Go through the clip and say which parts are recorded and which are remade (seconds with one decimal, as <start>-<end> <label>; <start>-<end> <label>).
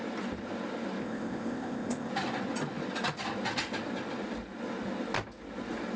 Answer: 0.0-1.0 recorded; 1.0-2.1 remade; 2.1-6.0 recorded